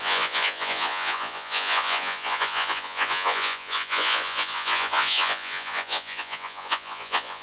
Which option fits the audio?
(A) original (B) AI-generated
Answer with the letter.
B